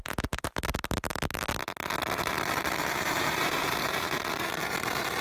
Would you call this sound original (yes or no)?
no